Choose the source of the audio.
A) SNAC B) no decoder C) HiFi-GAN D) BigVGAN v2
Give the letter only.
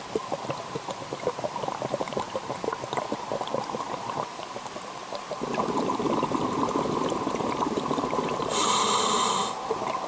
B